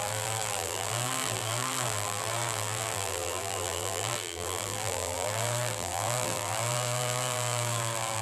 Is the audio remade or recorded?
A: remade